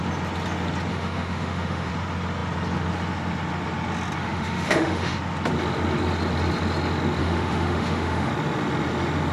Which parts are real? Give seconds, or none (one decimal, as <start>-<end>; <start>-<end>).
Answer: 0.0-0.9; 1.9-4.2; 5.2-7.2; 8.3-9.3